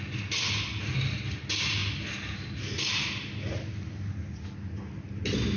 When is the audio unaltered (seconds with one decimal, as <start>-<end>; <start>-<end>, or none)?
0.0-5.6